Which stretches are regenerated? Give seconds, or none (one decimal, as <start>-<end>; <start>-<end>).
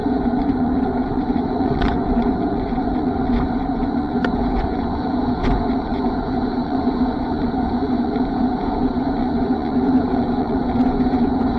0.0-11.6